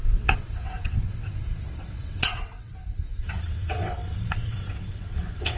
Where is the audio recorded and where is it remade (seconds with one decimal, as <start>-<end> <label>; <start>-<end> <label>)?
0.0-2.7 remade; 2.7-3.2 recorded; 3.2-5.6 remade